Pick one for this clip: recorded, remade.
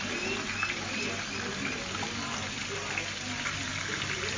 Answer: recorded